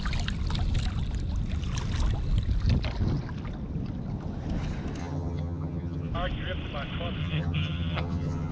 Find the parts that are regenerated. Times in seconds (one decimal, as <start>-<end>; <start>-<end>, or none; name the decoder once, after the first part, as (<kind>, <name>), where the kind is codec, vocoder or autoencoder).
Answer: 5.0-6.1 (vocoder, HiFi-GAN); 7.2-8.5